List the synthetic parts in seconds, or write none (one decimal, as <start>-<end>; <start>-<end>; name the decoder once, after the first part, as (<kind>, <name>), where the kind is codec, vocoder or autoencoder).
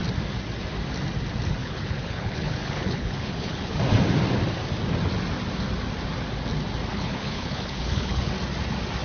1.6-3.7 (codec, HILCodec); 6.9-8.3